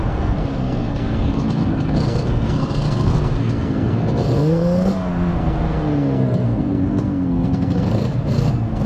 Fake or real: fake